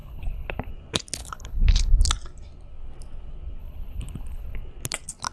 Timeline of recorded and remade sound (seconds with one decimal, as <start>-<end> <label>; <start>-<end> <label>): 0.0-0.7 remade; 0.7-1.2 recorded; 1.2-1.9 remade; 1.9-3.6 recorded; 3.6-4.6 remade; 4.6-5.3 recorded